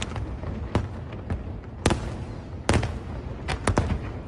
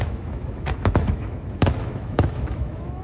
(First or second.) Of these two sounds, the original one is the first